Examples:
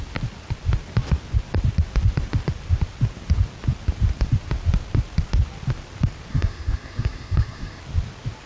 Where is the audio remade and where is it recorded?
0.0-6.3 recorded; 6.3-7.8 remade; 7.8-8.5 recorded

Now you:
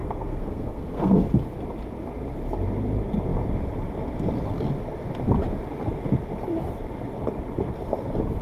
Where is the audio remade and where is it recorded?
0.0-1.3 remade; 1.3-8.4 recorded

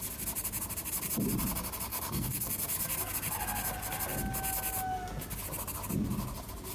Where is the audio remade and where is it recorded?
0.0-1.9 recorded; 1.9-2.5 remade; 2.5-6.7 recorded

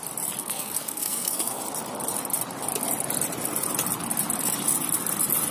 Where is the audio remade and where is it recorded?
0.0-0.4 recorded; 0.4-1.6 remade; 1.6-5.5 recorded

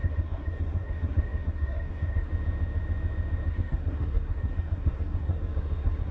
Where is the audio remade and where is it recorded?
0.0-2.3 remade; 2.3-3.5 recorded; 3.5-6.1 remade

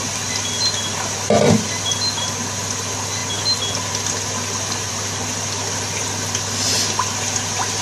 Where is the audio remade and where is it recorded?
0.0-7.8 recorded

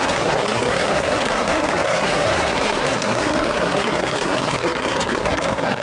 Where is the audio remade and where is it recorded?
0.0-5.8 remade